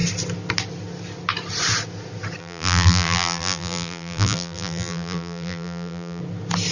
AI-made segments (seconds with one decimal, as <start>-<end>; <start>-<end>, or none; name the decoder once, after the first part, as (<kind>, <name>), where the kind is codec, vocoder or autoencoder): 2.4-6.2 (vocoder, BigVGAN v2)